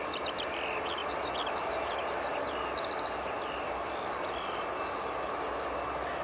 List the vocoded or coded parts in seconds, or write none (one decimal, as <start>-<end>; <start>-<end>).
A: none